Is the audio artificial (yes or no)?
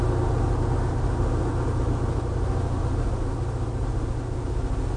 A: no